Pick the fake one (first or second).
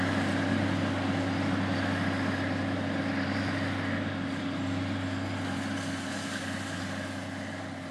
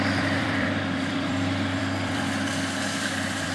second